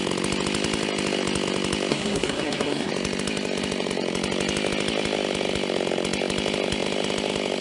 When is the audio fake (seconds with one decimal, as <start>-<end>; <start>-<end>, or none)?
1.9-2.9